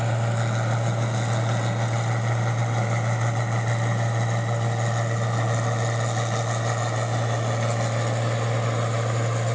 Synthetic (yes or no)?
no